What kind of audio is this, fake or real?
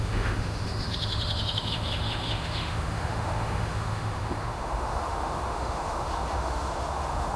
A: fake